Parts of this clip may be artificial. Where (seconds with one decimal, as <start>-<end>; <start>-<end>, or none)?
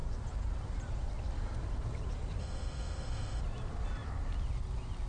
2.4-3.4